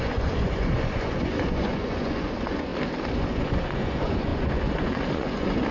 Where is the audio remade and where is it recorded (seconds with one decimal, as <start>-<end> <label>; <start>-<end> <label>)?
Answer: 0.0-2.7 remade; 2.7-3.2 recorded; 3.2-5.7 remade